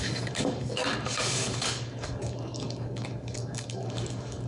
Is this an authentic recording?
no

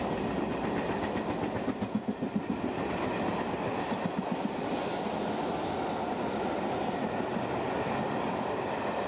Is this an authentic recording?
yes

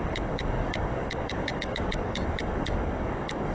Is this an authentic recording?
no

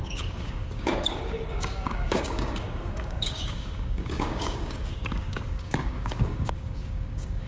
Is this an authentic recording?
no